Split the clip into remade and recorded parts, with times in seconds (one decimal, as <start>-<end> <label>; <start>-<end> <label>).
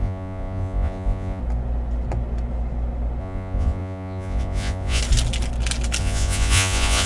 0.0-1.4 remade; 1.4-3.2 recorded; 3.2-5.0 remade; 5.0-6.0 recorded; 6.0-7.1 remade